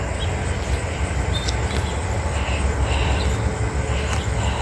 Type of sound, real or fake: real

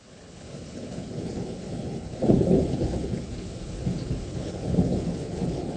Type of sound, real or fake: fake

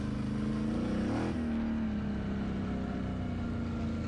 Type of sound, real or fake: real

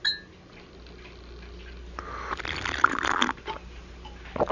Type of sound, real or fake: real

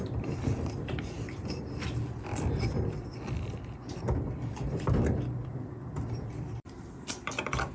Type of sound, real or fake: fake